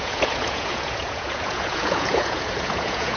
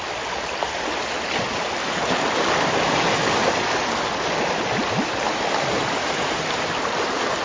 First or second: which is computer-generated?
first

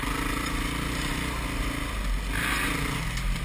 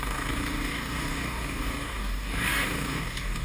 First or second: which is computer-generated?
second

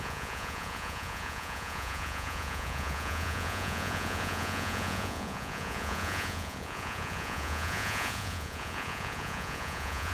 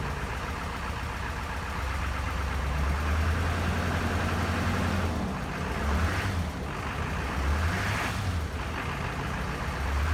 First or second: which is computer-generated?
first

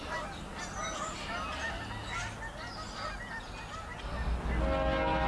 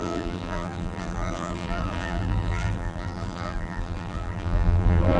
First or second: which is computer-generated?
second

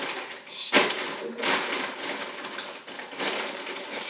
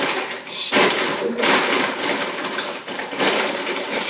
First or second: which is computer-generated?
second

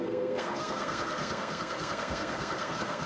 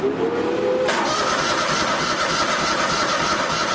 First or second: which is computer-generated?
first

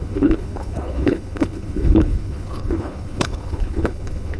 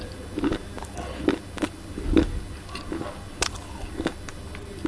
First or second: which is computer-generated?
first